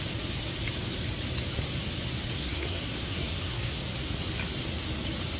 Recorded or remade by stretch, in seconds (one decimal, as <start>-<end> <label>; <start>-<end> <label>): 0.0-2.3 recorded; 2.3-3.8 remade; 3.8-5.4 recorded